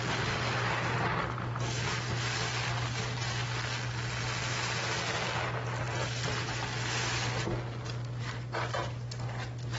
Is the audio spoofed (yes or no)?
no